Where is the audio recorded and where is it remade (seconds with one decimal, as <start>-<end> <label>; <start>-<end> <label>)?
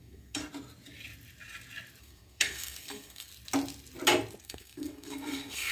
0.0-0.4 remade; 0.4-2.0 recorded; 2.0-3.3 remade; 3.3-4.4 recorded; 4.4-5.7 remade